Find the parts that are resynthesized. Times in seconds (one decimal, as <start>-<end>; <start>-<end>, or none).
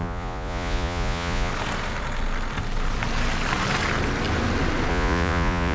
0.0-1.5; 4.9-5.7